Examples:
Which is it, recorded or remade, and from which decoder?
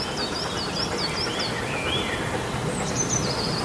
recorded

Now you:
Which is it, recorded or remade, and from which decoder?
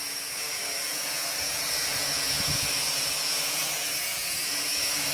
remade, vocoder, Vocos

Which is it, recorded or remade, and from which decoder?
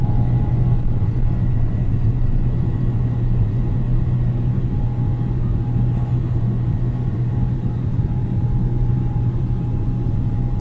remade, vocoder, Vocos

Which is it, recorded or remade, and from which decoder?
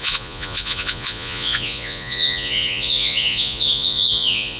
remade, vocoder, Vocos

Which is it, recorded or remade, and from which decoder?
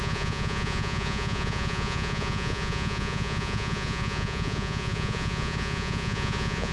remade, vocoder, Vocos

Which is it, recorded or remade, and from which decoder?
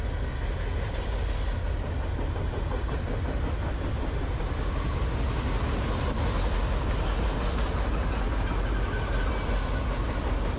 recorded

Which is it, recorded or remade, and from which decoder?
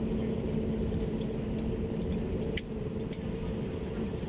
recorded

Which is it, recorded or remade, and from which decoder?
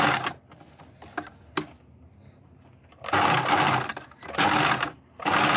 recorded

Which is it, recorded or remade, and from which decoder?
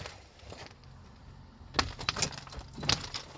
recorded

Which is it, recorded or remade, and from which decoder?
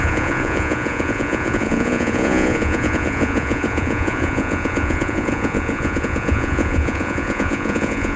remade, vocoder, Vocos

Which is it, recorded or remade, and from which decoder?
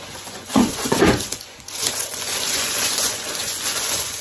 remade, vocoder, Vocos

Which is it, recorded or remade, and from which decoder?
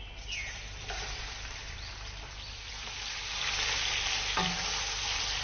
recorded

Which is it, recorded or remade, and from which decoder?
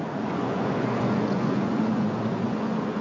remade, vocoder, Vocos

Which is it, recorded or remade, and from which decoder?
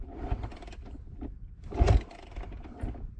recorded